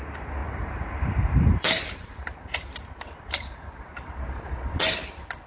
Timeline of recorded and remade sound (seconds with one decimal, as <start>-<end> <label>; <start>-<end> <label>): 0.0-0.4 recorded; 0.4-3.7 remade; 3.7-5.5 recorded